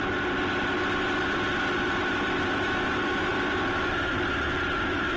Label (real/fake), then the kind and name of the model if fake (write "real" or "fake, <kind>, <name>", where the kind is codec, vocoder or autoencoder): real